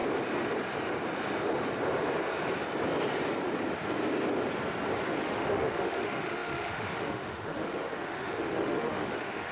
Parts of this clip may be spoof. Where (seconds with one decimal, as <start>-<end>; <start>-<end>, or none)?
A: 5.2-9.5